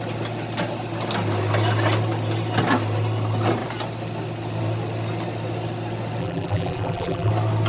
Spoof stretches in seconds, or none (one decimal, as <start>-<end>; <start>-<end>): 6.2-7.3